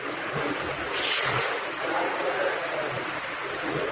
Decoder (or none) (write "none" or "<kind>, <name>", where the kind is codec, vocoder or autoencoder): vocoder, Vocos